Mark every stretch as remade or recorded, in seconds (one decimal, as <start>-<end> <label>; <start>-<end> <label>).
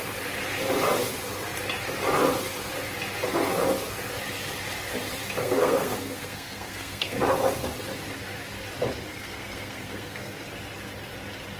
0.0-5.4 recorded; 5.4-7.2 remade; 7.2-9.1 recorded; 9.1-10.4 remade; 10.4-11.6 recorded